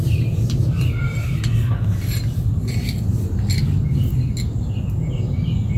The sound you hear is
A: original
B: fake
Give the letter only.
A